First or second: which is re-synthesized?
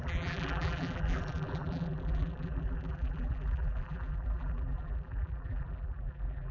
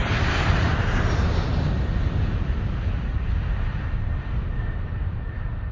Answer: first